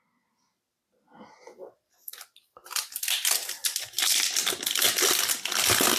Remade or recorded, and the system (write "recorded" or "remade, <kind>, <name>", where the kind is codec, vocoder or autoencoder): recorded